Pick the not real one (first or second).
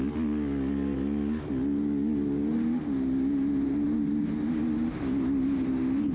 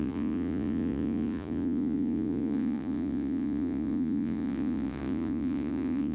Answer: second